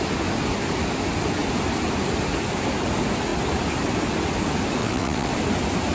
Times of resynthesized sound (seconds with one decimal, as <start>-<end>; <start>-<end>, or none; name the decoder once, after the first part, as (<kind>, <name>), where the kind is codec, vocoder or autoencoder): 4.8-5.3 (vocoder, WaveNeXt)